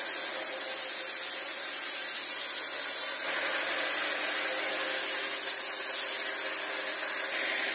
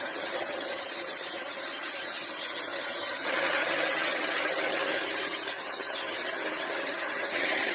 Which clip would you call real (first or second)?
first